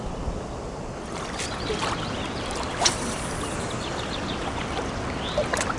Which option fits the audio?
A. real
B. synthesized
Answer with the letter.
A